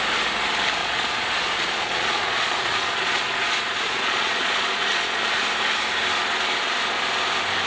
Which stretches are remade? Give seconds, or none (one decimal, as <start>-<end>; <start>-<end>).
0.8-5.4

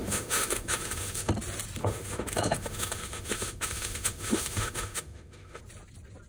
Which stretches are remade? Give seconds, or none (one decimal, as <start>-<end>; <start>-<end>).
0.0-1.3; 1.8-5.6

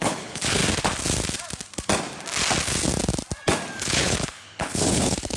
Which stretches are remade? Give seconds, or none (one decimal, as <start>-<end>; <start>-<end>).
0.0-0.6; 3.8-5.4